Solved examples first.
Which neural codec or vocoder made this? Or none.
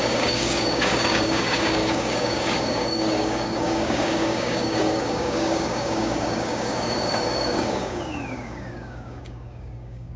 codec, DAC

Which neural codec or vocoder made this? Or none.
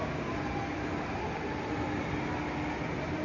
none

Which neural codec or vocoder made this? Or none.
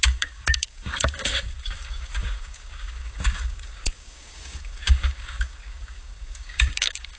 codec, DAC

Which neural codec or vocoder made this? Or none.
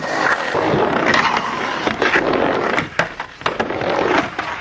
none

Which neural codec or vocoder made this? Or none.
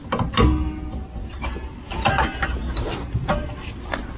none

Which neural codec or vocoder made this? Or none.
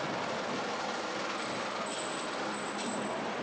none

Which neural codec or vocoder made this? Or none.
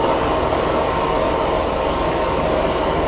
codec, DAC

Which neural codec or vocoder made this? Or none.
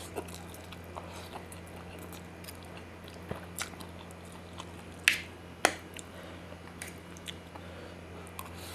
none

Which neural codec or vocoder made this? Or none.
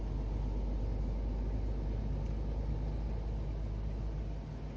none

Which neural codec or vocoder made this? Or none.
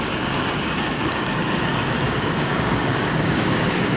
codec, DAC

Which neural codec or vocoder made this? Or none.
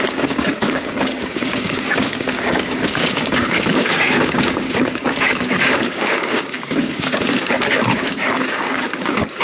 codec, DAC